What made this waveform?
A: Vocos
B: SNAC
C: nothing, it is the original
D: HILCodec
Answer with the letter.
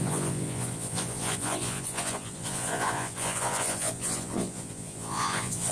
A